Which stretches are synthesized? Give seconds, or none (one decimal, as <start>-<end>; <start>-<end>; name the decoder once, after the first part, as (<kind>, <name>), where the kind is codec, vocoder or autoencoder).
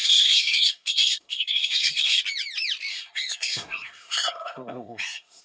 0.0-2.2 (codec, SNAC); 2.9-5.4